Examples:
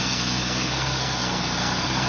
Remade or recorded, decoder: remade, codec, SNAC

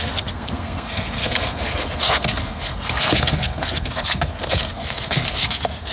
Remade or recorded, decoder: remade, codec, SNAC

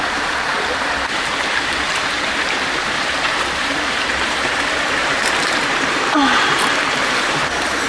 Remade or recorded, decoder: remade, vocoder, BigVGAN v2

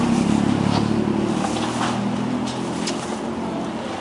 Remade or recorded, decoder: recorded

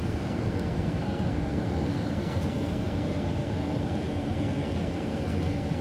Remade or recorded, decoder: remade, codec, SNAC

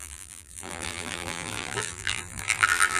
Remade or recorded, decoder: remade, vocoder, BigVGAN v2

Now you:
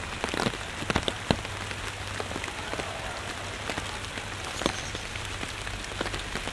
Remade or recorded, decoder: recorded